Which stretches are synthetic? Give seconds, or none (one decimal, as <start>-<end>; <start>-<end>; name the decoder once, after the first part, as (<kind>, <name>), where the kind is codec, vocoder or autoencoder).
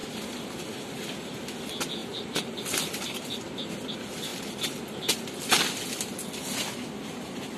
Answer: none